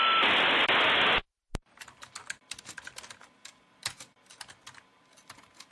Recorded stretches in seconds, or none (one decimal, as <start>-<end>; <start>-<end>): 0.0-5.7